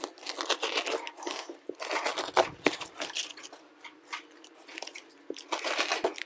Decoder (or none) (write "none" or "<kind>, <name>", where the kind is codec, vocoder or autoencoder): none